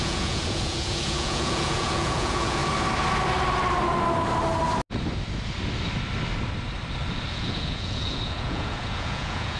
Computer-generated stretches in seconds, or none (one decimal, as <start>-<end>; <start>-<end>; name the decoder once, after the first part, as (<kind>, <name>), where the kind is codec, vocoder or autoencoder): 0.0-2.6 (vocoder, Vocos); 7.3-9.6